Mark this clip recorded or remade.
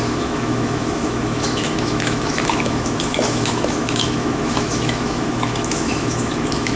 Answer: remade